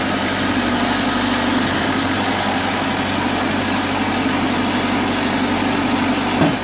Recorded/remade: recorded